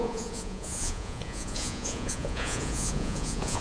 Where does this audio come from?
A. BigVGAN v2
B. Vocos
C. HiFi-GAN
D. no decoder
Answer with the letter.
B